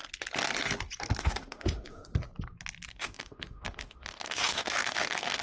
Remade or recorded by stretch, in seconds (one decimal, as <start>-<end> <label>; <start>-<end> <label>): 0.0-1.2 recorded; 1.2-2.1 remade; 2.1-2.9 recorded; 2.9-5.4 remade